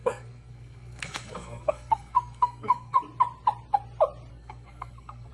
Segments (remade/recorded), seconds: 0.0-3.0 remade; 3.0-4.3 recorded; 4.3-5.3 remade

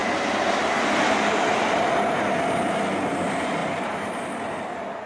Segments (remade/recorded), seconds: 0.0-5.1 recorded

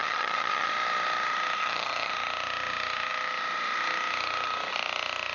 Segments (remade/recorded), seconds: 0.0-0.7 remade; 0.7-1.6 recorded; 1.6-2.1 remade; 2.1-5.3 recorded

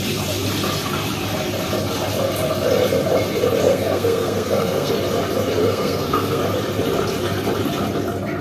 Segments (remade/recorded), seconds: 0.0-3.7 recorded; 3.7-4.9 remade; 4.9-5.6 recorded; 5.6-6.4 remade; 6.4-8.4 recorded

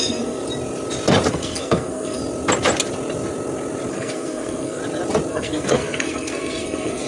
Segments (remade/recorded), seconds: 0.0-0.4 remade; 0.4-1.3 recorded; 1.3-2.2 remade; 2.2-3.9 recorded; 3.9-4.8 remade; 4.8-5.3 recorded; 5.3-7.1 remade

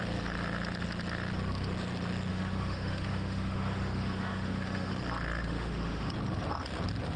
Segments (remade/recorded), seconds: 0.0-2.3 recorded; 2.3-4.9 remade; 4.9-5.4 recorded; 5.4-6.1 remade; 6.1-7.2 recorded

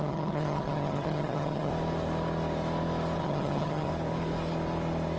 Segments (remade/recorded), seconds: 0.0-1.7 remade; 1.7-3.2 recorded; 3.2-3.9 remade; 3.9-5.2 recorded

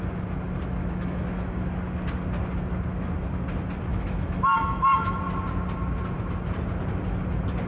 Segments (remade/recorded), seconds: 0.0-0.8 recorded; 0.8-1.6 remade; 1.6-3.9 recorded; 3.9-5.2 remade; 5.2-7.7 recorded